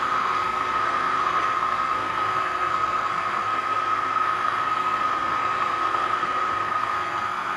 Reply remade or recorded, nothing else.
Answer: remade